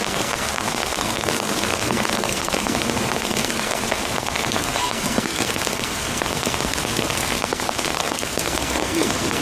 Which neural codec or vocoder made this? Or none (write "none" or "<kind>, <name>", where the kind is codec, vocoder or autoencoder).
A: codec, SNAC